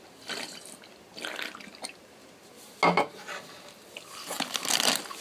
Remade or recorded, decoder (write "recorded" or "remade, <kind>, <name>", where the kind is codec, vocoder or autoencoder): recorded